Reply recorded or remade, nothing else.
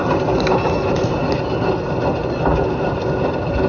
recorded